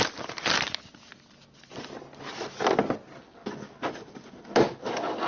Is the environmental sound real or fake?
real